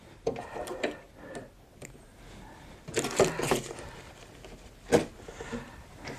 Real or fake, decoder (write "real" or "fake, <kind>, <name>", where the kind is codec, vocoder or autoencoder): real